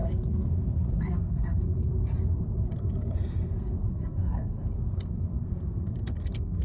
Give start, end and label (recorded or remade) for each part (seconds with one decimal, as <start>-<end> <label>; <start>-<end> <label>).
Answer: 0.0-1.9 remade; 1.9-2.7 recorded; 2.7-6.6 remade